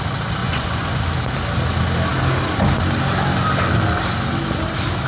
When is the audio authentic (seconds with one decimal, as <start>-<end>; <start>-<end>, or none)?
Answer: 0.0-0.4; 1.0-5.1